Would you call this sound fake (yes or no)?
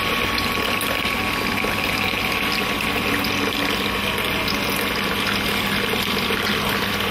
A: no